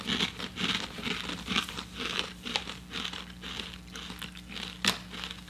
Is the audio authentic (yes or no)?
yes